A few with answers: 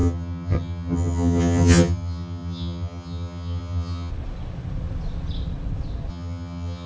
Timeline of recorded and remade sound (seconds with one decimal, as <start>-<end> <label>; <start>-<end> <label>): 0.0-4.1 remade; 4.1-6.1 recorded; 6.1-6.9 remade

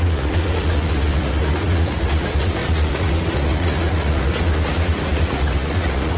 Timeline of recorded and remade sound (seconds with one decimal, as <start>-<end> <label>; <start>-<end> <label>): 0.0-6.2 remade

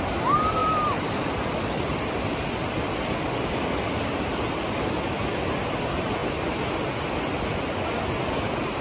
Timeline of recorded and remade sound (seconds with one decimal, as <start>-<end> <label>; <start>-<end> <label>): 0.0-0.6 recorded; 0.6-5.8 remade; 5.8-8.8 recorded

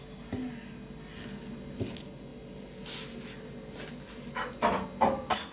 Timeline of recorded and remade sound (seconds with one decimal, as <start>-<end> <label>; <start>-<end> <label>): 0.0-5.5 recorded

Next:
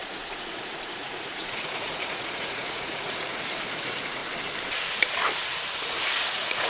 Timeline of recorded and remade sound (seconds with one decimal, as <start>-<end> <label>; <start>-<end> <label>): 0.0-4.2 remade; 4.2-5.8 recorded; 5.8-6.7 remade

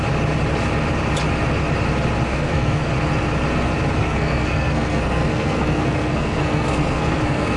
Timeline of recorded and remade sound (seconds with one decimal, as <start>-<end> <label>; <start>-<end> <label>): 0.0-2.3 recorded; 2.3-2.9 remade; 2.9-4.0 recorded; 4.0-7.6 remade

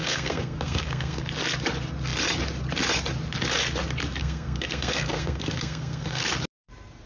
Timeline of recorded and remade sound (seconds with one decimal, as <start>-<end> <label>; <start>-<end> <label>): 0.0-1.2 remade; 1.2-4.2 recorded; 4.2-6.3 remade; 6.3-7.1 recorded

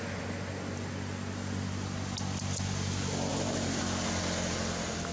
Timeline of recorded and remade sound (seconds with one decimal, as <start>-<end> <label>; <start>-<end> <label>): 0.0-3.3 recorded; 3.3-3.8 remade; 3.8-5.1 recorded